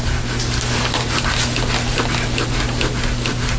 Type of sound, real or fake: real